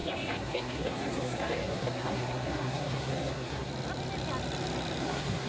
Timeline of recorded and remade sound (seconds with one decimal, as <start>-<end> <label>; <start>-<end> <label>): 0.0-3.7 remade; 3.7-5.0 recorded; 5.0-5.5 remade